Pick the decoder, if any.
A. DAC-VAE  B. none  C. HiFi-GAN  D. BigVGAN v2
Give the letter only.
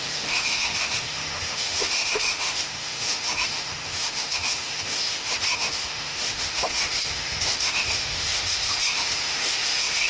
A